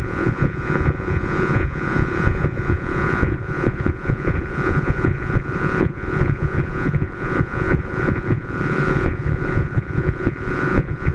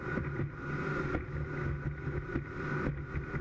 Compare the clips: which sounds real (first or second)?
second